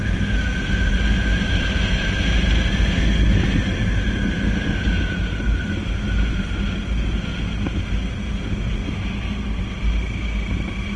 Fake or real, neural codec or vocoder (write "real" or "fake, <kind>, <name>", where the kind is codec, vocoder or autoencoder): real